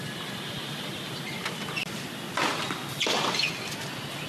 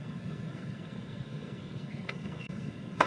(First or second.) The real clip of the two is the first